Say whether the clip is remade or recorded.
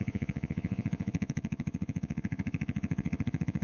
remade